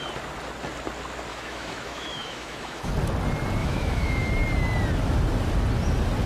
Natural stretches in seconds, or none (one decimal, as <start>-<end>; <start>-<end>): 0.0-1.3; 2.9-3.6; 4.3-6.3